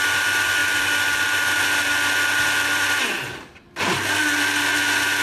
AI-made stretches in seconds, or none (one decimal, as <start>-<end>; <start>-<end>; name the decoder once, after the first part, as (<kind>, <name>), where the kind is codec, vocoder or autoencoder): none